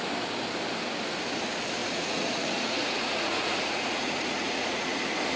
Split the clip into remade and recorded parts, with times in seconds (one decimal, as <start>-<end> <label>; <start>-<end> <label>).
0.0-1.8 recorded; 1.8-5.0 remade; 5.0-5.4 recorded